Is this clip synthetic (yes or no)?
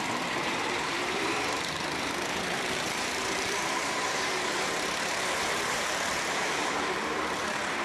yes